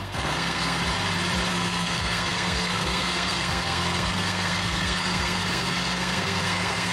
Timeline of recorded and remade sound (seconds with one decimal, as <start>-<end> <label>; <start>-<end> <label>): 0.0-0.8 remade; 0.8-1.5 recorded; 1.5-6.9 remade